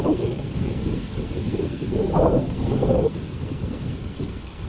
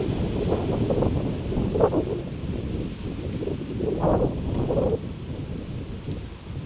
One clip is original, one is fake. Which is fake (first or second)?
first